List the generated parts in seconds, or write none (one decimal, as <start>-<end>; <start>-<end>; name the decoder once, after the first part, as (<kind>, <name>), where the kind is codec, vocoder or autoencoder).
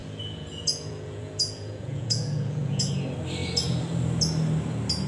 0.0-2.9 (vocoder, Vocos)